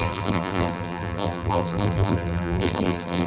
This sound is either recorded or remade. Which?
remade